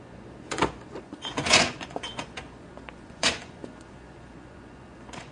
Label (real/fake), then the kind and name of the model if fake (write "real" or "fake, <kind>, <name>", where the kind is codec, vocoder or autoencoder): fake, vocoder, Vocos